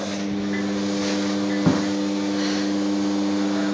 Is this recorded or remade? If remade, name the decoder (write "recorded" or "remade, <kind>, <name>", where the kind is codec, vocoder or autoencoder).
recorded